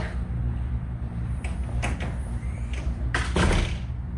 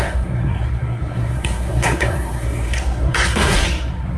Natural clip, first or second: first